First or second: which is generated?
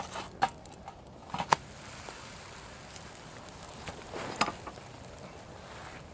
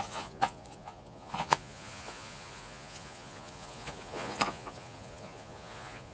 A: second